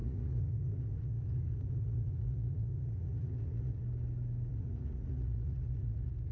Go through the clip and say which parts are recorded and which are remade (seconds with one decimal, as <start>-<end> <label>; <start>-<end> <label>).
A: 0.0-3.8 remade; 3.8-4.5 recorded; 4.5-6.3 remade